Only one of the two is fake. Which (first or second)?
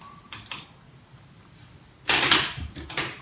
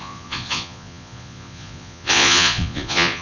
second